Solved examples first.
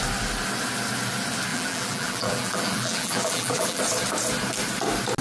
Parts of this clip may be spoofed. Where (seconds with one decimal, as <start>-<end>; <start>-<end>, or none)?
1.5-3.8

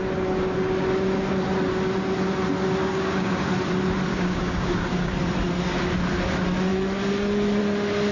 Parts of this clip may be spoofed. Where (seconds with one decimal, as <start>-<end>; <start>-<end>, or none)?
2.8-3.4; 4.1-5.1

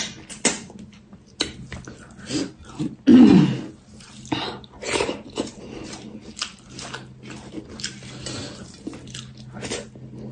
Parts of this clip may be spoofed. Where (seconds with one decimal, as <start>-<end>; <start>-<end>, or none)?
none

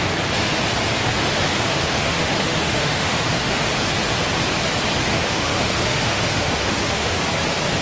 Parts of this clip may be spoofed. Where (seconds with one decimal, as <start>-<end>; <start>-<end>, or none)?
1.2-3.7; 5.1-7.2